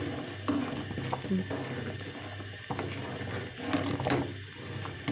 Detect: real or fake real